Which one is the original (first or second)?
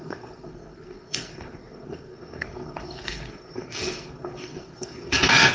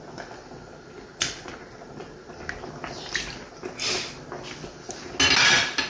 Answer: second